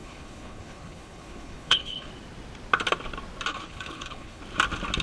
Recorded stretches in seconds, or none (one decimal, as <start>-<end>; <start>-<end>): 2.1-3.5; 4.4-5.0